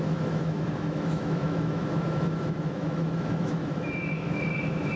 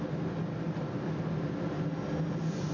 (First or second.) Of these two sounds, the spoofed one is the first